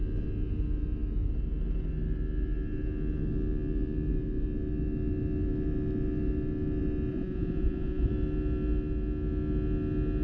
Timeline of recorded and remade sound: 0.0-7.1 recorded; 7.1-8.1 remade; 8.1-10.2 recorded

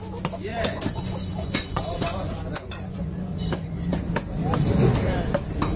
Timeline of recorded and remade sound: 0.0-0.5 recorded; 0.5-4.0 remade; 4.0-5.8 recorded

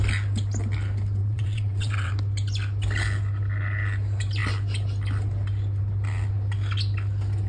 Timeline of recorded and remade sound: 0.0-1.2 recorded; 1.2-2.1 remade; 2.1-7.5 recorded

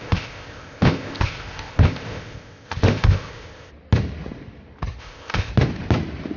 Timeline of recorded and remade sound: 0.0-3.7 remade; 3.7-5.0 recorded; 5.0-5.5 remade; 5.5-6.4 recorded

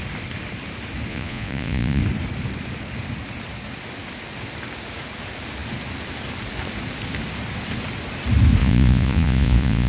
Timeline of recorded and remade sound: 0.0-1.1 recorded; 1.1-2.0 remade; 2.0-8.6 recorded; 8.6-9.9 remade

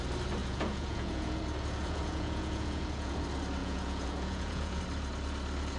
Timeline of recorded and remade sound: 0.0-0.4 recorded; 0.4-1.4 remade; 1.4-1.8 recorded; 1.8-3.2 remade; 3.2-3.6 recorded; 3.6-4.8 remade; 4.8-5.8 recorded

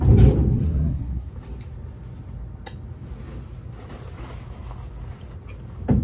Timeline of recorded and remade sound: 0.0-0.5 recorded; 0.5-1.3 remade; 1.3-6.0 recorded

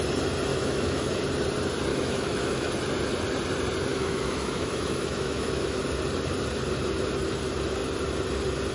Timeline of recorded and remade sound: 0.0-0.5 recorded; 0.5-1.1 remade; 1.1-1.9 recorded; 1.9-2.7 remade; 2.7-3.9 recorded; 3.9-5.8 remade; 5.8-8.7 recorded